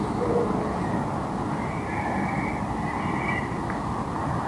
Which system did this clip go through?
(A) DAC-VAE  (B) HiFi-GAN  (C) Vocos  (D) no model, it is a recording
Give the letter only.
D